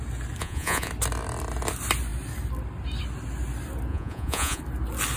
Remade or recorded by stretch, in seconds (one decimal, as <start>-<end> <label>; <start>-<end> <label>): 0.0-0.4 recorded; 0.4-0.9 remade; 0.9-3.9 recorded; 3.9-4.6 remade; 4.6-5.2 recorded